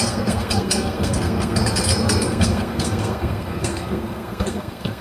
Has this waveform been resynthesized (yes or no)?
yes